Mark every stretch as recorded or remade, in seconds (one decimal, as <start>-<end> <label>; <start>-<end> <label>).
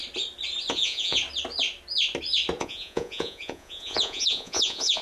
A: 0.0-0.7 recorded; 0.7-1.2 remade; 1.2-2.6 recorded; 2.6-5.0 remade